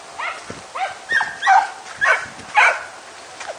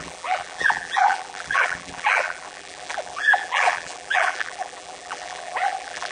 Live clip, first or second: first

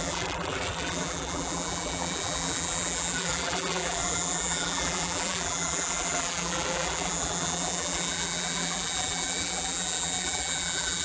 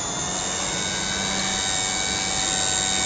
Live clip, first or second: second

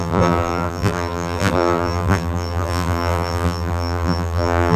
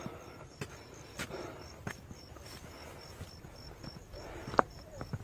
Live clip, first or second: second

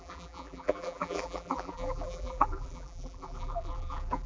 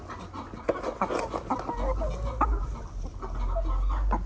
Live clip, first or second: second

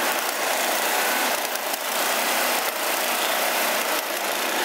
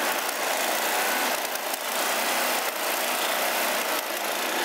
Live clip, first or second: second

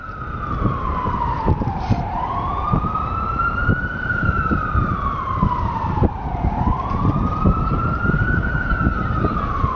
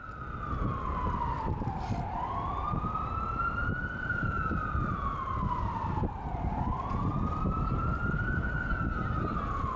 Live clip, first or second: second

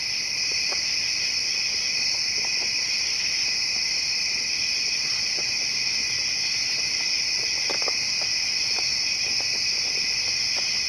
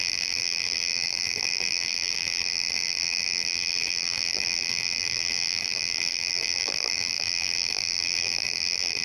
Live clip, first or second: first